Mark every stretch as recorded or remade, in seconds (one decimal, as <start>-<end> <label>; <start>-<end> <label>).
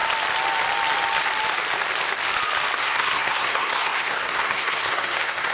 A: 0.0-2.8 recorded; 2.8-5.5 remade